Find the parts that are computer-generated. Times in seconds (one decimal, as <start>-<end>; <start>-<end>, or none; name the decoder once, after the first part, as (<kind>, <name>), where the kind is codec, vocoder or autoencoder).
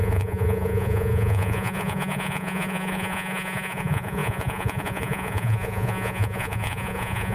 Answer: 0.0-7.3 (vocoder, Vocos)